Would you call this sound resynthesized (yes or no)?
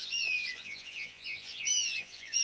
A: yes